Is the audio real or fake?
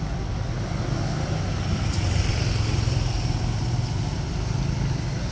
real